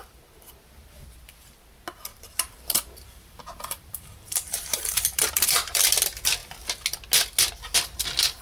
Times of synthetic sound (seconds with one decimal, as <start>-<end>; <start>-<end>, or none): 2.1-5.8